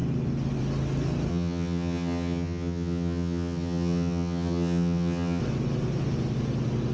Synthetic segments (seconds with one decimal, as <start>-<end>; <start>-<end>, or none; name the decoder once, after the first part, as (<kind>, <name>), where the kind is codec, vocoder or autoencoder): 1.3-5.4 (vocoder, HiFi-GAN)